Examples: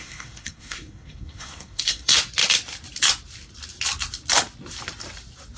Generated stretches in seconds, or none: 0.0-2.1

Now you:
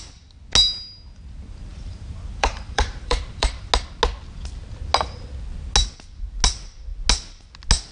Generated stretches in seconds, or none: 1.7-3.7

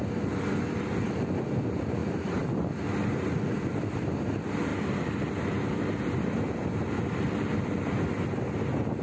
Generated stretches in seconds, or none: none

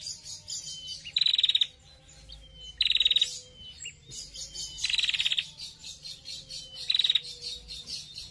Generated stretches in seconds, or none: none

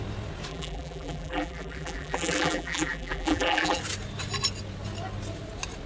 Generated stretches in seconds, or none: 0.5-3.8